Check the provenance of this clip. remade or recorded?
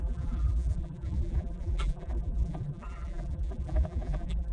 remade